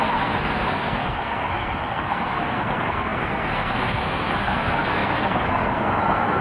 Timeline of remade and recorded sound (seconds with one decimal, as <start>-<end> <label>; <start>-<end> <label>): 0.0-6.4 remade

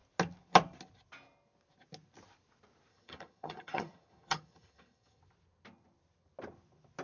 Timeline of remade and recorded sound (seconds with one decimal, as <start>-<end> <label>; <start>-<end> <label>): 0.0-2.9 recorded; 2.9-5.2 remade; 5.2-7.0 recorded

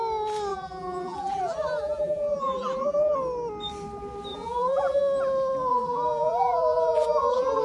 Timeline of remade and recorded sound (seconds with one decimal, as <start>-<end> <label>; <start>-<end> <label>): 0.0-0.5 recorded; 0.5-3.1 remade; 3.1-4.3 recorded; 4.3-5.0 remade; 5.0-5.7 recorded; 5.7-7.6 remade

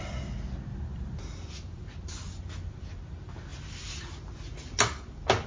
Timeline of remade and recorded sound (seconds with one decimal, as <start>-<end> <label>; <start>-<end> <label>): 0.0-5.5 recorded

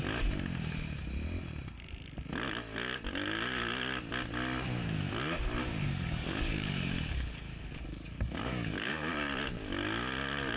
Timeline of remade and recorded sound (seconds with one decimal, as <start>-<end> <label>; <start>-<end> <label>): 0.0-5.6 recorded; 5.6-9.1 remade; 9.1-10.6 recorded